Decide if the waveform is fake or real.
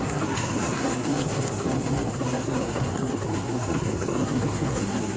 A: fake